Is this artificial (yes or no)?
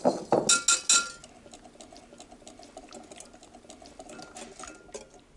no